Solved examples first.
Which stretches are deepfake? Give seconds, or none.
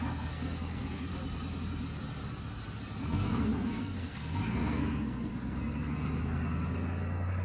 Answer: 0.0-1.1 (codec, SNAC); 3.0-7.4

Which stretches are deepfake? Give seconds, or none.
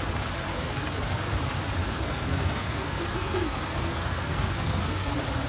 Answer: 0.5-1.3 (codec, SNAC); 1.8-5.1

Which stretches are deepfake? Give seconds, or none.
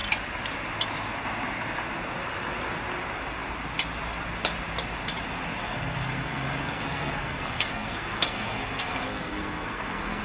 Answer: 5.6-10.2 (codec, SNAC)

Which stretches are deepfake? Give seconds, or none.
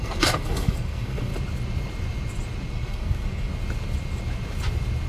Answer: 0.0-1.3 (codec, SNAC); 2.7-3.5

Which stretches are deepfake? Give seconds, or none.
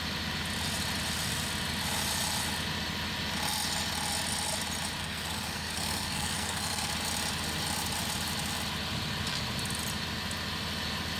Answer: 5.0-6.9 (codec, SNAC)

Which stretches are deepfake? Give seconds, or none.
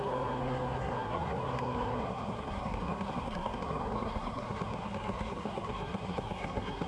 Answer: 0.0-6.9 (codec, SNAC)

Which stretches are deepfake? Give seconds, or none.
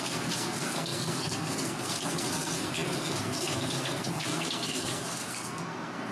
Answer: 0.0-6.1 (codec, SNAC)